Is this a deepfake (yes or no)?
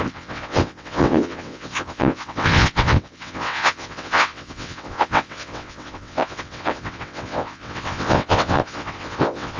yes